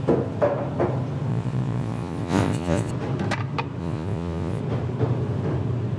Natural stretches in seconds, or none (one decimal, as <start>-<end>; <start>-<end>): 0.0-1.3; 2.9-3.8; 4.6-6.0